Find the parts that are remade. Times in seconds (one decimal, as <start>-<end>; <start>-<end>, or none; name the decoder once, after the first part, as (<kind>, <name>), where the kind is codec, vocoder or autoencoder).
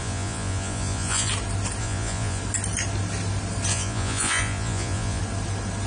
0.0-1.3 (vocoder, Vocos); 1.8-2.4; 3.7-5.2